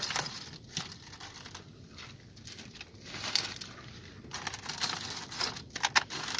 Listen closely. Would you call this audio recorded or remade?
remade